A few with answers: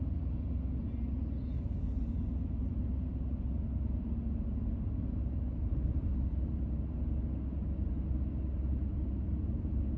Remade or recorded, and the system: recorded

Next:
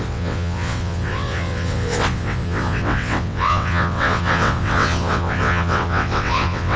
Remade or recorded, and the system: remade, vocoder, WaveNeXt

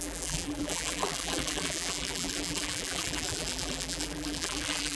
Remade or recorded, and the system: remade, vocoder, BigVGAN v2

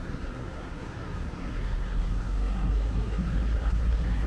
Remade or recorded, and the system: remade, codec, SNAC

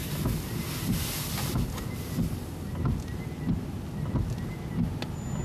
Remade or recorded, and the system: recorded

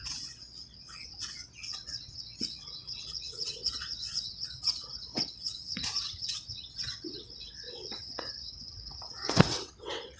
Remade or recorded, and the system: remade, vocoder, WaveNeXt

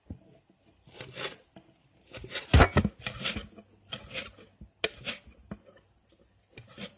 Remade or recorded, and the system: recorded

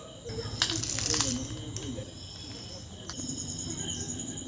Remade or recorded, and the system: recorded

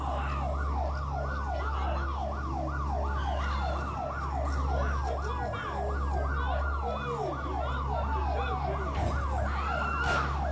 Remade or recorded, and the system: recorded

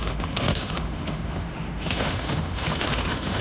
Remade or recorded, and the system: remade, autoencoder, DAC-VAE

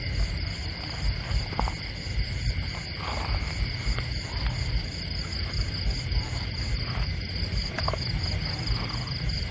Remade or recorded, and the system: recorded